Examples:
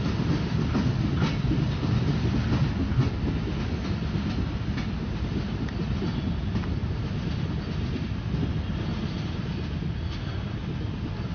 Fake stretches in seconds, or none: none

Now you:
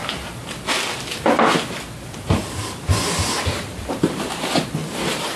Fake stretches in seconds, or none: none

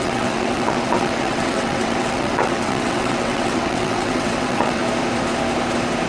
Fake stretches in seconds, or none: 0.0-4.8